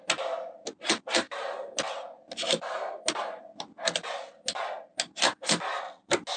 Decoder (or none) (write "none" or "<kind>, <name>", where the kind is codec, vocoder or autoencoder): none